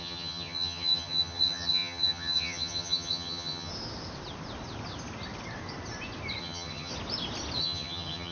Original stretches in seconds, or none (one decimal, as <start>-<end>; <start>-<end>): 3.7-6.4; 6.9-7.6